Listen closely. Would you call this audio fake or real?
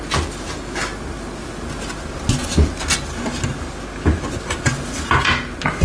real